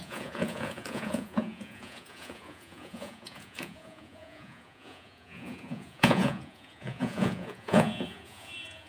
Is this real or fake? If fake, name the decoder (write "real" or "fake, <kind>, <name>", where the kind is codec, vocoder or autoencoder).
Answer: fake, vocoder, Vocos